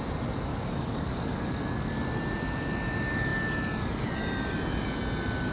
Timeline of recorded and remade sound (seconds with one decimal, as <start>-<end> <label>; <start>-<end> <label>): 0.0-0.5 recorded; 0.5-1.9 remade; 1.9-5.5 recorded